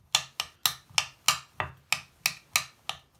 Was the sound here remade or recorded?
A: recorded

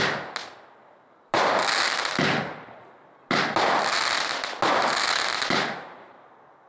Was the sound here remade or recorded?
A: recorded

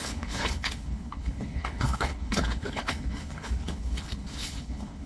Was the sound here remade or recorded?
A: remade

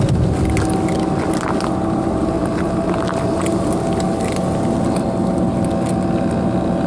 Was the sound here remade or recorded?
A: recorded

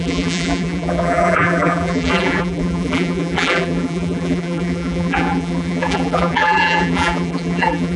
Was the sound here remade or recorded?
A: remade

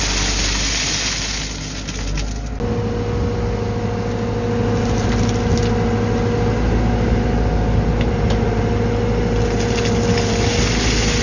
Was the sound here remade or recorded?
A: recorded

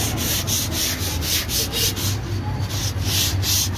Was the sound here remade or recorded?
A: recorded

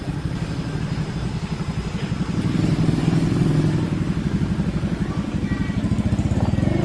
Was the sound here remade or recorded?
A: recorded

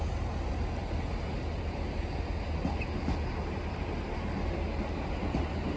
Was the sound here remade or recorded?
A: recorded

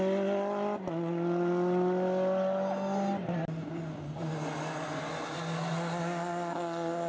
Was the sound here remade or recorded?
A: recorded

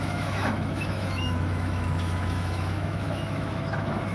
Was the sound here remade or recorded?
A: remade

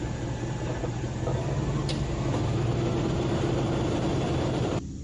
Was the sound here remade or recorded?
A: recorded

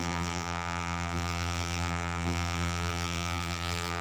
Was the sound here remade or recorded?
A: remade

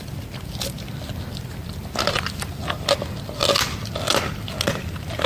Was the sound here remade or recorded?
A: recorded